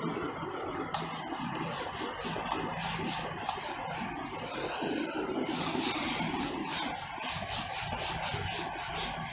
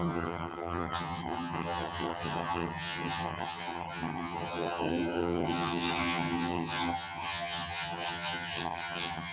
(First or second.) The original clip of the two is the first